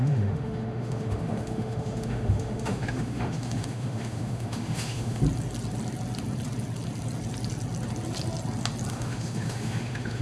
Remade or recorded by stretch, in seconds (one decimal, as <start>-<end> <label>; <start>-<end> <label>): 0.0-5.2 remade; 5.2-8.9 recorded; 8.9-10.2 remade